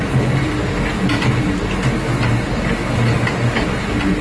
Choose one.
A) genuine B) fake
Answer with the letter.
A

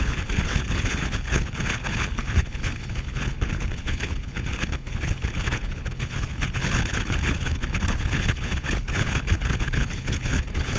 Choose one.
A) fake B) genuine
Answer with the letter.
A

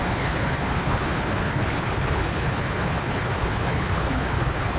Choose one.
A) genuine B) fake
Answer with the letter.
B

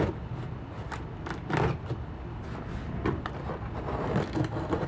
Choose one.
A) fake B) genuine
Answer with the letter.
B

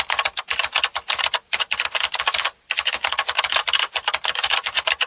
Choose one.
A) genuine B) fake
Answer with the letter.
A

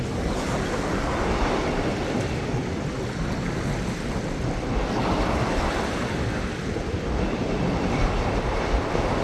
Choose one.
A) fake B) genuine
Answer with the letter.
B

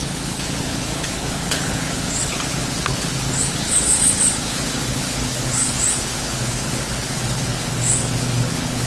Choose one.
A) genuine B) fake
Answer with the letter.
B